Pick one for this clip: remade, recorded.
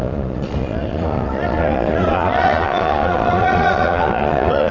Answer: remade